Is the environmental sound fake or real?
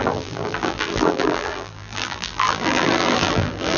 fake